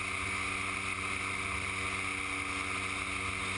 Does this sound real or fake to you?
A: real